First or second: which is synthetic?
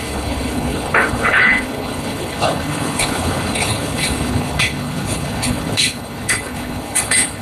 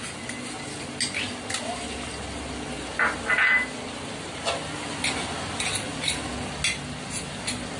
first